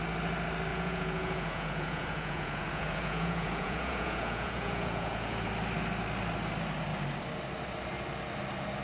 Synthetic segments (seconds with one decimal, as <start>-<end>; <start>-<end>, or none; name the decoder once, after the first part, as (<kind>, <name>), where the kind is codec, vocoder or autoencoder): 0.7-5.5 (vocoder, Vocos)